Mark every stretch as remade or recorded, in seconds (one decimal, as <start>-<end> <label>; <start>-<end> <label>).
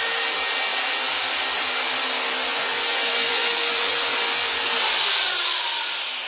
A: 0.0-2.5 recorded; 2.5-4.8 remade; 4.8-6.3 recorded